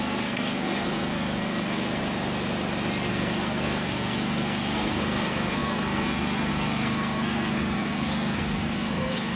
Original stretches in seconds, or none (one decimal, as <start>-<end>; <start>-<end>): 2.0-3.1